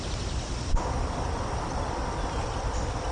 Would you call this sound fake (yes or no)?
no